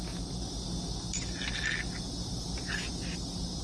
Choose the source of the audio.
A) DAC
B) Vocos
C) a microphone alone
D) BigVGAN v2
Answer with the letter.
C